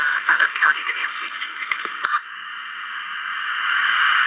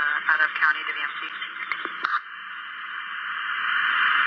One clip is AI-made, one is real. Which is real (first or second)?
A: second